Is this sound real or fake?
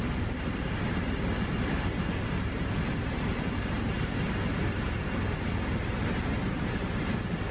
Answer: real